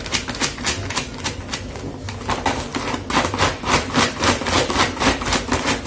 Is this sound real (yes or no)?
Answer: yes